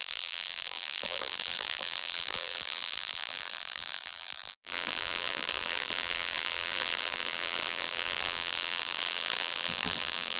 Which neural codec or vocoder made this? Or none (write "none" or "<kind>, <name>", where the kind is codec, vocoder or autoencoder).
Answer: vocoder, BigVGAN v2